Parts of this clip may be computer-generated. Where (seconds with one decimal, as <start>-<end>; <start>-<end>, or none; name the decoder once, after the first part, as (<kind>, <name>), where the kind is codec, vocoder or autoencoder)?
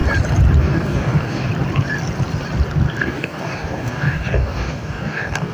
0.6-1.5 (codec, DAC); 3.0-5.5